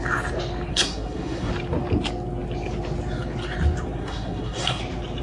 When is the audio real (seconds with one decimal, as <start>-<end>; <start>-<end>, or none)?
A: 0.0-0.7; 1.5-4.0; 4.8-5.2